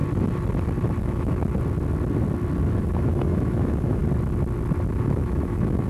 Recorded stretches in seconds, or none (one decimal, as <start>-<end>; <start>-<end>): 0.0-1.0; 1.4-2.8; 4.0-4.9